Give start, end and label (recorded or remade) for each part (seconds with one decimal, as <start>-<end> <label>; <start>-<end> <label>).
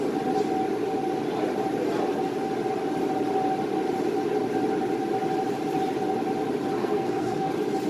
0.0-6.8 recorded; 6.8-7.5 remade; 7.5-7.9 recorded